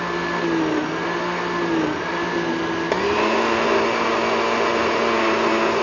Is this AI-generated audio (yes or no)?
no